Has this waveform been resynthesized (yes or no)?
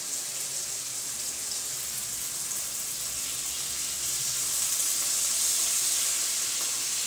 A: no